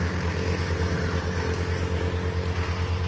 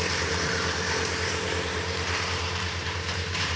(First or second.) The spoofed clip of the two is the second